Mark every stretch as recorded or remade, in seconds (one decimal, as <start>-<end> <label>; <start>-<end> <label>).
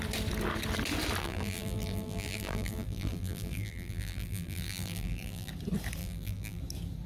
0.0-1.2 recorded; 1.2-5.5 remade; 5.5-6.0 recorded; 6.0-6.6 remade; 6.6-7.1 recorded